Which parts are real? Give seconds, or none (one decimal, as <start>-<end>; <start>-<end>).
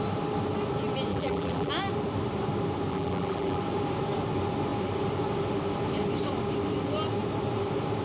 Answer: 0.0-1.1; 1.7-2.9; 3.6-8.0